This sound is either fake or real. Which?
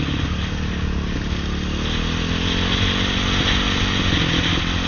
real